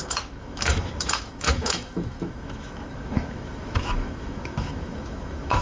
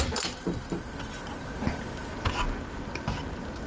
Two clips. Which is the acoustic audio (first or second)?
second